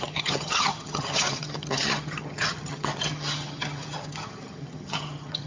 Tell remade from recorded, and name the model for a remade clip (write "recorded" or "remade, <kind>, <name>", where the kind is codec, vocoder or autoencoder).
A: remade, vocoder, HiFi-GAN